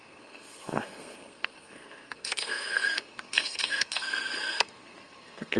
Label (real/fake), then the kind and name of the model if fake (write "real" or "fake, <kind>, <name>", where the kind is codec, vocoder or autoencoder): fake, codec, SNAC